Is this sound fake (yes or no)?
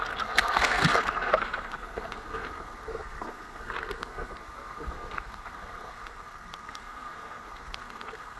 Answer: yes